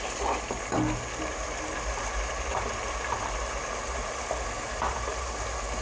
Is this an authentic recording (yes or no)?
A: yes